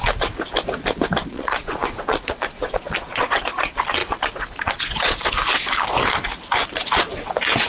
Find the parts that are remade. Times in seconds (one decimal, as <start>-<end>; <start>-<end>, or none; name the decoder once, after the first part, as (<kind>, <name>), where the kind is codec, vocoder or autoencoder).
1.3-3.4 (vocoder, Vocos); 4.0-5.3